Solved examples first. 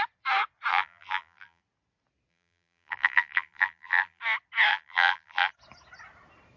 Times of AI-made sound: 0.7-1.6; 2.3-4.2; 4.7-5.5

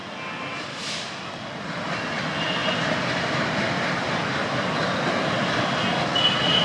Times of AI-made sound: 0.0-1.7; 2.6-6.0

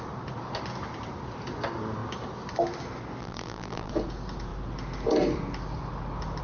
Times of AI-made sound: 3.2-3.9

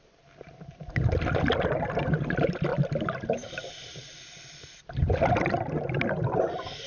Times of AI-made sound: none

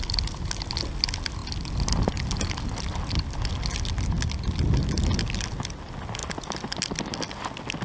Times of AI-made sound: none

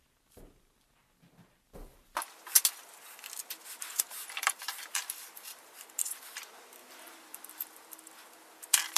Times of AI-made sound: 3.6-6.2; 6.8-9.0

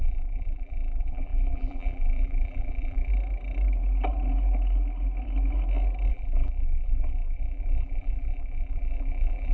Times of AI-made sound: 0.0-3.1; 6.1-9.5